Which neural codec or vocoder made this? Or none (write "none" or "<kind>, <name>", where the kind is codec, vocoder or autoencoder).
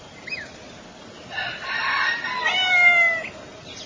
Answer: none